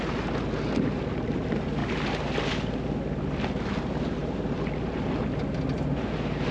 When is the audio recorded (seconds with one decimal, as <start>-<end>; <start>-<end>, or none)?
0.0-4.2; 5.2-6.5

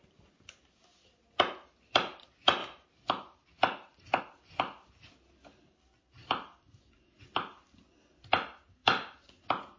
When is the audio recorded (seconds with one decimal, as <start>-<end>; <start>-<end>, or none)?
0.0-2.6; 4.2-6.2; 7.8-8.8; 9.4-9.8

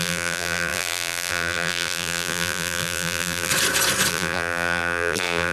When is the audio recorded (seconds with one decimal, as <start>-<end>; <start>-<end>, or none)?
3.5-4.1

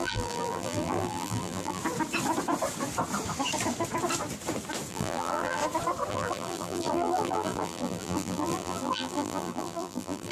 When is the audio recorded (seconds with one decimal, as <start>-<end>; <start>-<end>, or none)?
1.8-4.9; 5.6-6.1

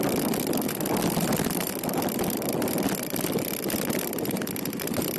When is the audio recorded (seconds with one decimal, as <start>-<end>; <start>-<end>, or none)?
0.0-5.2

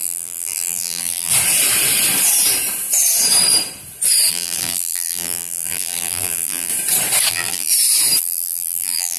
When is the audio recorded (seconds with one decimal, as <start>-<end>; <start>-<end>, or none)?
1.3-4.3; 6.7-7.3; 7.7-8.2